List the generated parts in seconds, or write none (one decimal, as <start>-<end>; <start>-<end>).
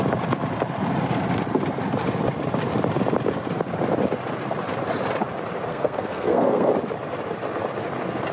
5.7-6.7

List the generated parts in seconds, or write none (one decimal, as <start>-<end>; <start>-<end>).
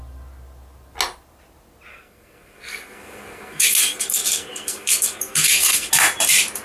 1.9-5.9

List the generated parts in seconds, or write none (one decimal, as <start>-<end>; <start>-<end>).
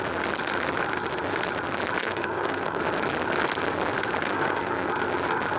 2.0-2.8; 4.3-4.9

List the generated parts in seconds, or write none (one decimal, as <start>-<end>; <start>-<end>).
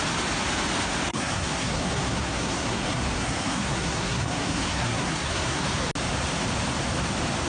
1.1-5.6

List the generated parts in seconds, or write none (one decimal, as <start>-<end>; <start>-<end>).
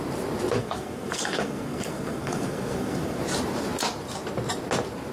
0.6-3.2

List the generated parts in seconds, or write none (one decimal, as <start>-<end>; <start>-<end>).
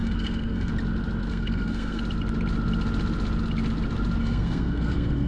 0.0-0.7; 1.3-2.0; 4.2-5.3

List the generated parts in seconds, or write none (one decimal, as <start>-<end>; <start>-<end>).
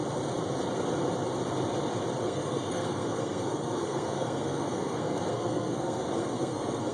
2.2-6.9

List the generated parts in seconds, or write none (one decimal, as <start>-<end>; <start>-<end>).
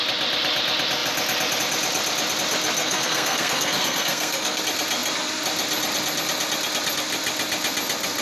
2.8-4.6